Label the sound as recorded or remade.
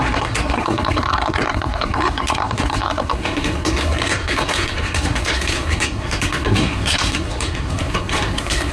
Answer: remade